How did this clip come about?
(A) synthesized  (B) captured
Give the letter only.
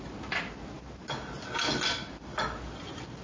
B